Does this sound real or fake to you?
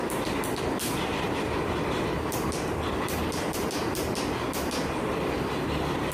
fake